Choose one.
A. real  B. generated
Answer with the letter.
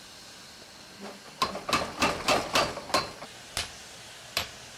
A